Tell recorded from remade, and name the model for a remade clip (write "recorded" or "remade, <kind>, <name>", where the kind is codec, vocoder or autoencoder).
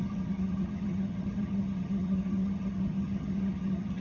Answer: remade, vocoder, HiFi-GAN